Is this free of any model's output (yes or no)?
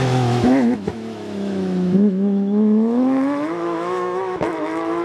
no